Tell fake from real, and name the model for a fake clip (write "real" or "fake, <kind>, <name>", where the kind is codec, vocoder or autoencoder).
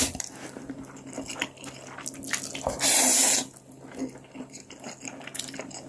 real